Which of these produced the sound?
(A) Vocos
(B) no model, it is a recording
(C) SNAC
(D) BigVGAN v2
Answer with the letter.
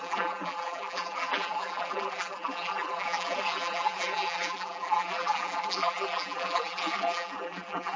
D